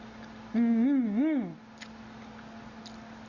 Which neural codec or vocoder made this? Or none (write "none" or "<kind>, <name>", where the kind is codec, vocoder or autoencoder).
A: none